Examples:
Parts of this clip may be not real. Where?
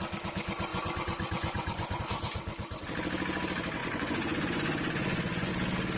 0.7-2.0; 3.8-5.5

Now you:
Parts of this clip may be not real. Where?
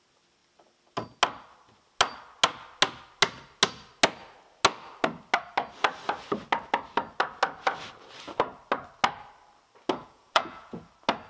10.0-10.9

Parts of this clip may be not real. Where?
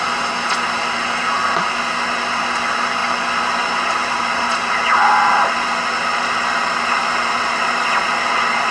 none